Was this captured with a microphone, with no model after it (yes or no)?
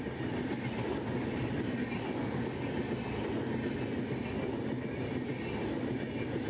yes